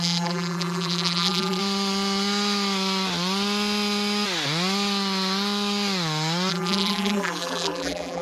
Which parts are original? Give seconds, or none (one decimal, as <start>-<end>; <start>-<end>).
1.6-6.5